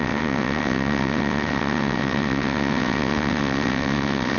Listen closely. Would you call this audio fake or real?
fake